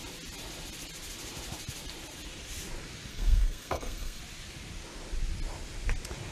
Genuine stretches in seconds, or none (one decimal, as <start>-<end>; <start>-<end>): 0.0-3.1; 4.2-6.3